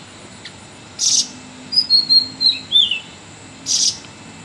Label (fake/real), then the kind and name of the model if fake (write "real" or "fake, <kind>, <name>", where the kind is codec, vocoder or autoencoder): real